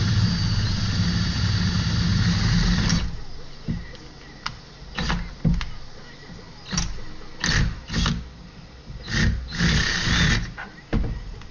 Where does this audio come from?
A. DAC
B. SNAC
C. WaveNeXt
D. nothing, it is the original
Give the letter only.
D